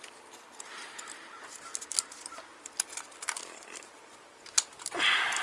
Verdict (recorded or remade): recorded